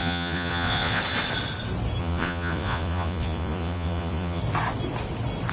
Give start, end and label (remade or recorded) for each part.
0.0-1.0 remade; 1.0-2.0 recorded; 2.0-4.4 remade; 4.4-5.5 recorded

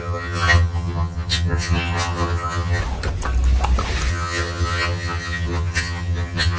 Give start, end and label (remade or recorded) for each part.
0.0-2.8 remade; 2.8-4.1 recorded; 4.1-6.6 remade

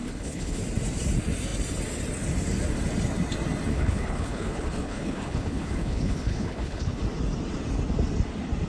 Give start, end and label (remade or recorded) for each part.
0.0-0.6 remade; 0.6-3.7 recorded; 3.7-7.0 remade; 7.0-8.7 recorded

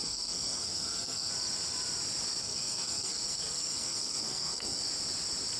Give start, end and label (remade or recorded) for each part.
0.0-1.3 remade; 1.3-2.4 recorded; 2.4-4.8 remade; 4.8-5.6 recorded

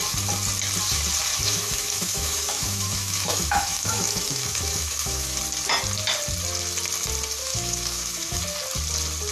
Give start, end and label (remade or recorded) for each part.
0.0-1.3 recorded; 1.3-5.4 remade; 5.4-7.4 recorded; 7.4-8.4 remade; 8.4-9.3 recorded

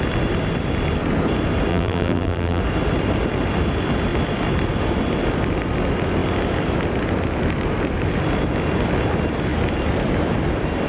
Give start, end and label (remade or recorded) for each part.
0.0-1.7 recorded; 1.7-2.6 remade; 2.6-10.9 recorded

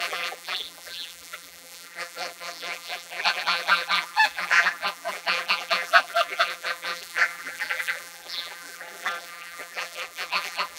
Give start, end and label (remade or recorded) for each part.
0.0-10.8 remade

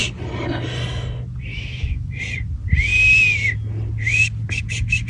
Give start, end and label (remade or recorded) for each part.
0.0-1.5 recorded; 1.5-2.2 remade; 2.2-5.1 recorded